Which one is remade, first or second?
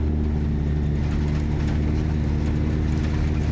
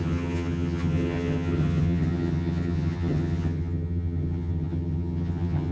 second